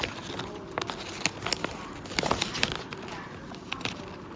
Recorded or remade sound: recorded